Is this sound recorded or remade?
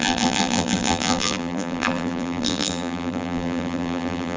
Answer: remade